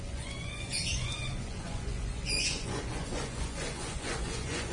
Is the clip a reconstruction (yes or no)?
yes